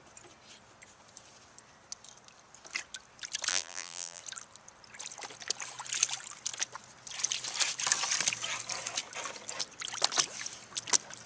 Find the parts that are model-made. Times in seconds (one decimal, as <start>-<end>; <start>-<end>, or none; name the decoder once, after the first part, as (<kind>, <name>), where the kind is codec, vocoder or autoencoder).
3.5-4.2 (vocoder, BigVGAN v2)